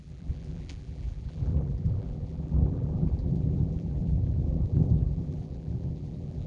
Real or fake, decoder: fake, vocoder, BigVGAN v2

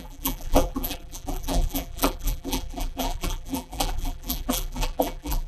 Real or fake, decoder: fake, vocoder, BigVGAN v2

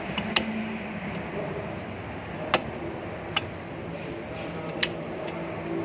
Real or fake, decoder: real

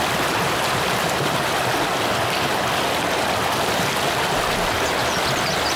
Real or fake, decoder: real